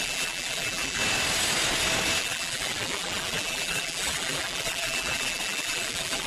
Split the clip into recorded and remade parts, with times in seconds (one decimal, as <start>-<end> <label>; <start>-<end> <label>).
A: 0.0-1.0 remade; 1.0-2.2 recorded; 2.2-6.3 remade